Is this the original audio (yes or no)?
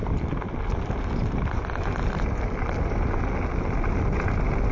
yes